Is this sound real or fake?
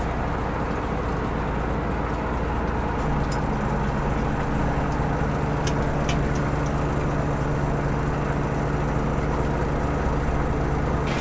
real